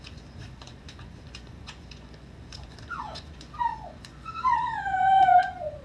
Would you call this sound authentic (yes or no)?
no